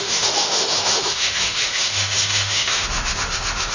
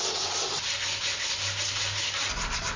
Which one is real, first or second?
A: second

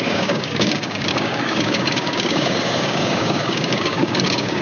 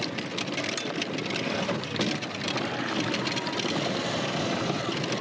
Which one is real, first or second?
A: second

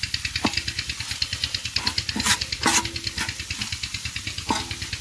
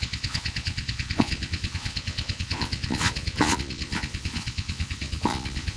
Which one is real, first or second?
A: first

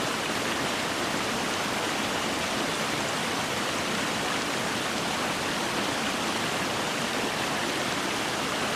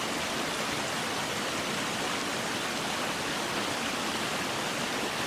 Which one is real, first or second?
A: second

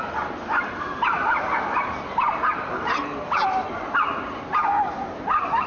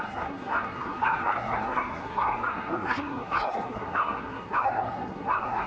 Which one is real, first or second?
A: first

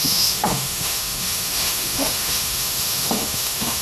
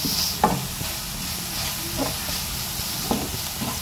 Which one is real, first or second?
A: second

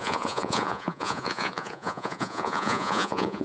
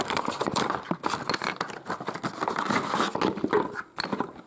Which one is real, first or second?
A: second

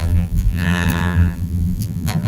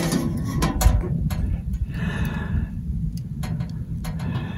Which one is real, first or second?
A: second